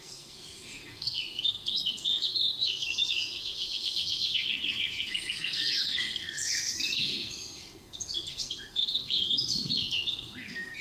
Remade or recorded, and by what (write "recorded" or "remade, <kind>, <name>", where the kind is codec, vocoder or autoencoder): remade, codec, SNAC